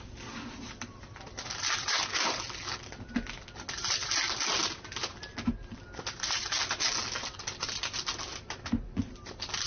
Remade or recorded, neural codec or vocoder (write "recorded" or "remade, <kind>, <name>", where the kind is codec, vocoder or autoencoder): recorded